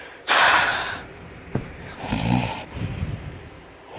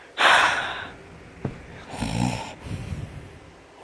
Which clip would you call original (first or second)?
second